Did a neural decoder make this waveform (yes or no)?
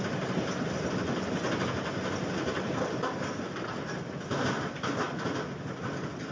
no